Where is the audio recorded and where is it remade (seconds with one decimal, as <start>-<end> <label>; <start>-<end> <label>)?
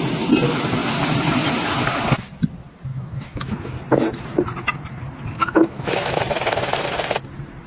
0.0-2.9 recorded; 2.9-3.7 remade; 3.7-5.4 recorded; 5.4-6.2 remade; 6.2-7.7 recorded